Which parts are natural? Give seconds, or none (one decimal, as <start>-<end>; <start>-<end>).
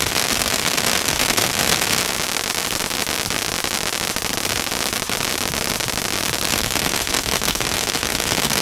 2.0-6.5